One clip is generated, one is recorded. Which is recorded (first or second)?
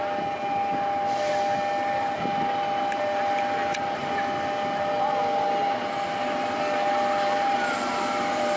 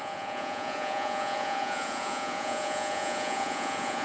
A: first